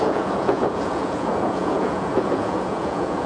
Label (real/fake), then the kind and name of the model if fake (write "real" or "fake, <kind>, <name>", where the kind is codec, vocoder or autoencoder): fake, vocoder, Vocos